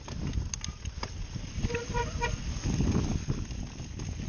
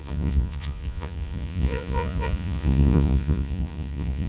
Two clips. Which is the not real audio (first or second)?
second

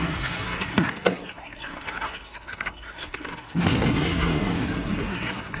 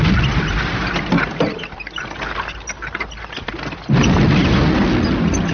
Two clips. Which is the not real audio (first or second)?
first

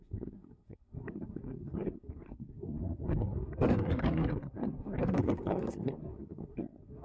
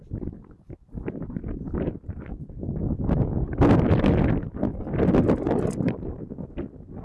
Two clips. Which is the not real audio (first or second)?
first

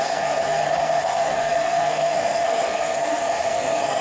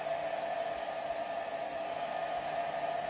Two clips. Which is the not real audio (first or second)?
first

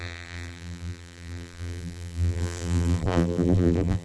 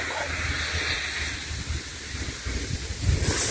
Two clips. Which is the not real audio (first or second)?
first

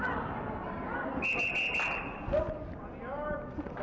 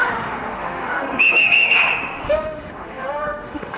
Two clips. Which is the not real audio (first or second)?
second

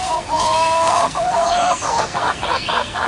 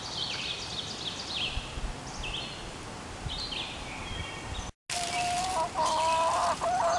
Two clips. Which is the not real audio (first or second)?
first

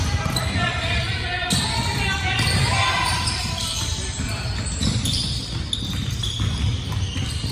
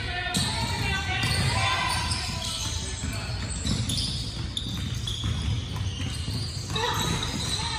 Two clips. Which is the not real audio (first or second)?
first